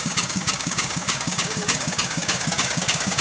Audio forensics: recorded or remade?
remade